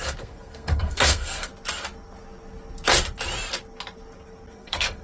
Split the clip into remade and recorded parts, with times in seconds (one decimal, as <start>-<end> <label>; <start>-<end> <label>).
0.0-1.5 remade; 1.5-4.5 recorded; 4.5-5.0 remade